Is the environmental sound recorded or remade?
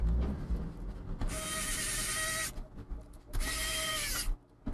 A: recorded